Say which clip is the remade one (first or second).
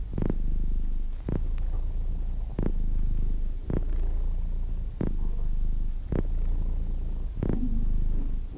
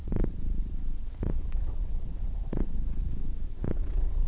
second